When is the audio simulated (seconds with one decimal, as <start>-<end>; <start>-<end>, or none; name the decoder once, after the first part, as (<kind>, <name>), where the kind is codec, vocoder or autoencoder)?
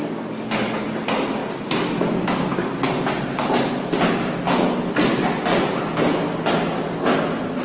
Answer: none